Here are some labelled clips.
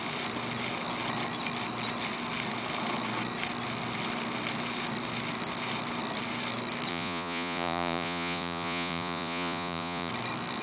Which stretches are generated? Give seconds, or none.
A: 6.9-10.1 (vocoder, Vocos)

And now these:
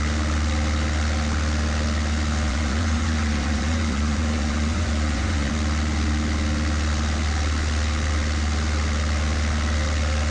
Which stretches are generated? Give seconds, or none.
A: 2.5-5.5 (vocoder, Vocos)

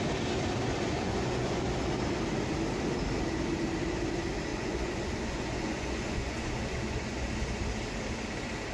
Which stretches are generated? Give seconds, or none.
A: 0.7-1.6 (vocoder, Vocos); 4.5-7.6

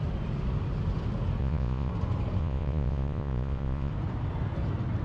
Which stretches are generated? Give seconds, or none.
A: 1.4-1.9 (vocoder, Vocos); 2.4-3.9

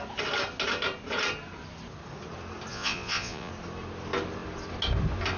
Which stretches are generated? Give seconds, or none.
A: 2.7-3.5 (vocoder, Vocos)

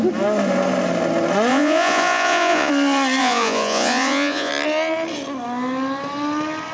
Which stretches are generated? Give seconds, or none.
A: 1.5-2.7 (vocoder, Vocos); 3.2-4.5

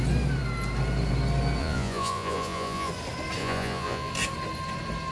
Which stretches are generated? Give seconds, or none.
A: 1.6-2.9 (vocoder, Vocos); 3.4-4.1